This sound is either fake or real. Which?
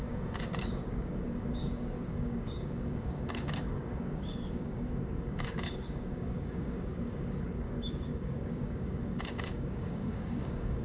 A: fake